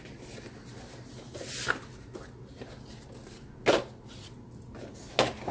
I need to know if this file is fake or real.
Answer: real